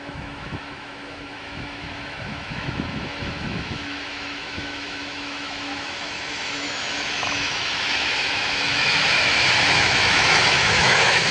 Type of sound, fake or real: fake